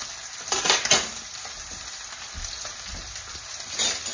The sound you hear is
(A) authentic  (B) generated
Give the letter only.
A